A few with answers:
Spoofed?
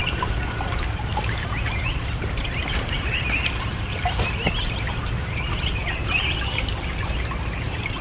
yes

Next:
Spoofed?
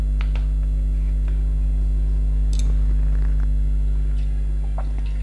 no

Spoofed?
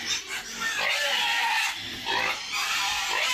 no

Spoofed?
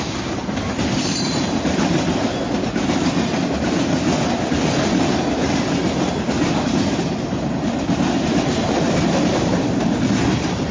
no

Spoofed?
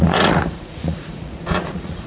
yes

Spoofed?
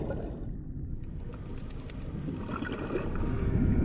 no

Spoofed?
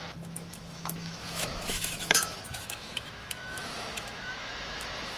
yes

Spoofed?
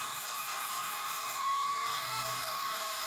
yes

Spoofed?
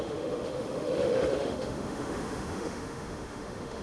yes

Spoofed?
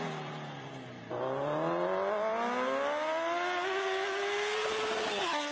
no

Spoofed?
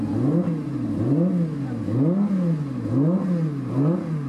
no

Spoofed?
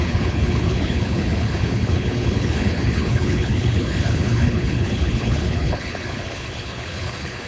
yes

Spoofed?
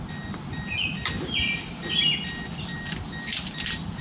no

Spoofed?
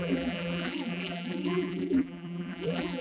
yes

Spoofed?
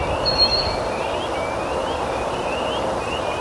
no